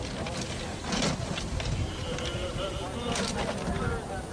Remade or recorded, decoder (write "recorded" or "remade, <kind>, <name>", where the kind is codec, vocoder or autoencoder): recorded